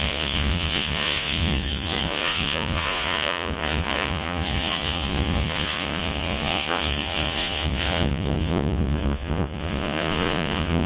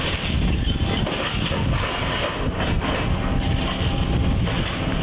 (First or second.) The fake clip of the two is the first